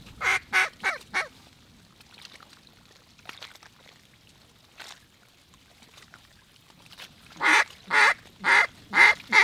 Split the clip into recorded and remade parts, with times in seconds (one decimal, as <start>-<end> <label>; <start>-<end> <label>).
0.0-5.7 recorded; 5.7-7.6 remade; 7.6-9.4 recorded